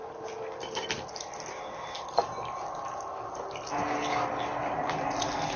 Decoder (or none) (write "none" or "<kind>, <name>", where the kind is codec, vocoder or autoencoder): none